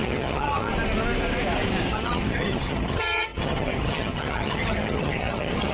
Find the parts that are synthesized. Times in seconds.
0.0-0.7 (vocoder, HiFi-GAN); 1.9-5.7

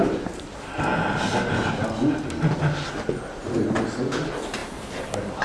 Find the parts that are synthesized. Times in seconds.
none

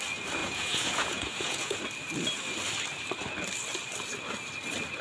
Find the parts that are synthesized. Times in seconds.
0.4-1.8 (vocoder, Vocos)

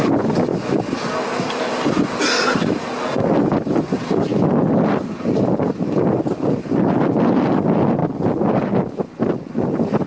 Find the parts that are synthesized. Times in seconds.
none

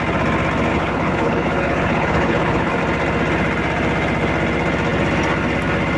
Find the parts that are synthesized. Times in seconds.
0.7-2.8 (codec, HILCodec)